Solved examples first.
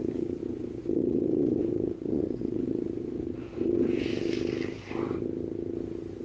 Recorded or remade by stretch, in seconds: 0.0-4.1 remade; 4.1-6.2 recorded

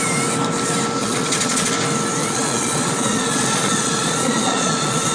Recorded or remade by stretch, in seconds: 0.0-1.0 recorded; 1.0-1.7 remade; 1.7-2.2 recorded; 2.2-5.1 remade

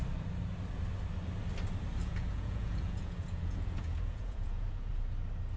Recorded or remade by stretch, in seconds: 0.0-2.0 recorded; 2.0-4.9 remade; 4.9-5.6 recorded

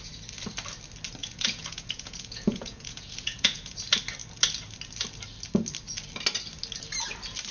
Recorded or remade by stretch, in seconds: 0.0-1.2 recorded; 1.2-3.8 remade; 3.8-7.5 recorded

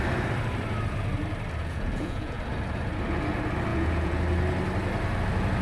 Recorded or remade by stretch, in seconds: 0.0-1.6 recorded; 1.6-2.4 remade; 2.4-3.7 recorded; 3.7-4.2 remade; 4.2-5.6 recorded

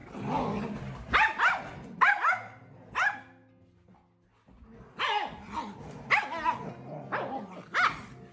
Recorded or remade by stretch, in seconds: 0.0-8.3 recorded